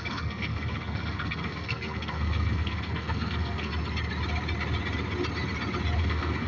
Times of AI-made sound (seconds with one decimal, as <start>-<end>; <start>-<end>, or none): 0.0-3.7; 6.0-6.5